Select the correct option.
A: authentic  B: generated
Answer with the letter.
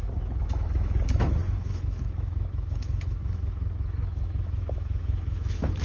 B